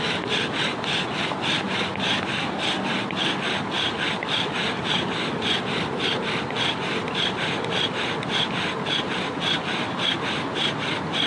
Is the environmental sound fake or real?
real